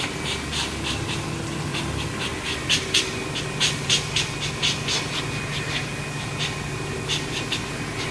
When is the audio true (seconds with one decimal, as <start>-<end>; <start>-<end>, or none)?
0.0-8.1